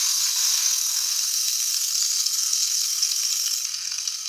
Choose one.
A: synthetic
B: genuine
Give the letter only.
A